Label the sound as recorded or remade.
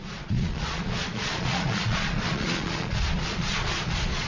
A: remade